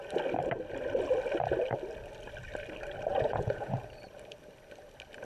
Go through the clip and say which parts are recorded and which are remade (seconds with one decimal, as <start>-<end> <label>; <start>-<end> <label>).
0.0-3.1 recorded; 3.1-3.8 remade; 3.8-5.2 recorded